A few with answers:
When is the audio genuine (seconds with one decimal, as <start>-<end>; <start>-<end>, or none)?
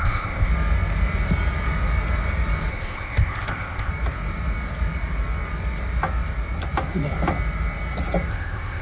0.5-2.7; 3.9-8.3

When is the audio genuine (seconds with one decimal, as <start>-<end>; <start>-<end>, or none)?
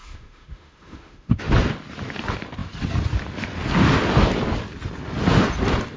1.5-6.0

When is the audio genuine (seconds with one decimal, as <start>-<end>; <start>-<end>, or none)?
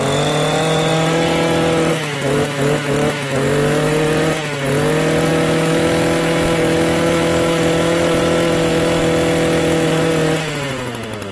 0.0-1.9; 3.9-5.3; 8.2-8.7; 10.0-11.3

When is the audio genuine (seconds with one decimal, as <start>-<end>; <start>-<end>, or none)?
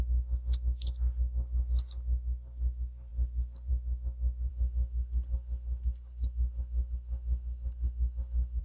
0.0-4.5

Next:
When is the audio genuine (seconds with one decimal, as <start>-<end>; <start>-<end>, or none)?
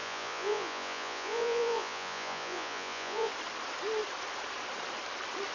3.3-5.5